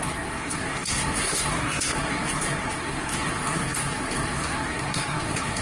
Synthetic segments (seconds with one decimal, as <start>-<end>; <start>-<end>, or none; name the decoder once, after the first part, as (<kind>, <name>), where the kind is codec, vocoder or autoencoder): 0.0-5.6 (codec, SNAC)